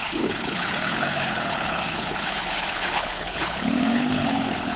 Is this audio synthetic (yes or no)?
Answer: yes